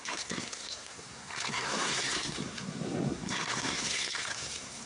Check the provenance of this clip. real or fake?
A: fake